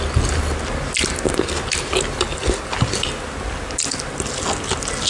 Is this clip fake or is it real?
real